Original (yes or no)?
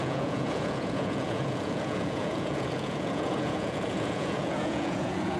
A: no